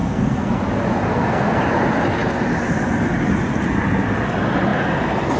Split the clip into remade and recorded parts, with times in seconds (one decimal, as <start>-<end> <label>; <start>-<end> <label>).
0.0-0.6 remade; 0.6-1.0 recorded; 1.0-1.6 remade; 1.6-5.4 recorded